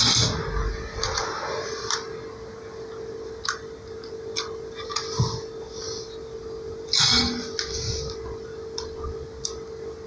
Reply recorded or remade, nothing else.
recorded